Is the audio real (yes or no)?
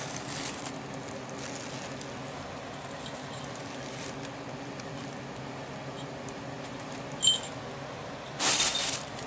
yes